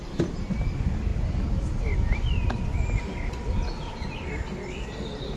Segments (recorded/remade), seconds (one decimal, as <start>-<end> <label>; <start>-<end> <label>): 0.0-5.4 recorded